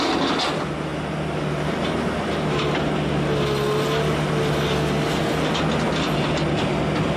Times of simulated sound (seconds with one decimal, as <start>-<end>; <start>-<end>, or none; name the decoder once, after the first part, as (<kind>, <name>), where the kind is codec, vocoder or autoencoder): none